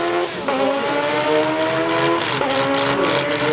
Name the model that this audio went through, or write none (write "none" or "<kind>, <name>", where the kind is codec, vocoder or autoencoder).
none